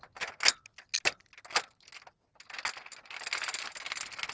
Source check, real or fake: real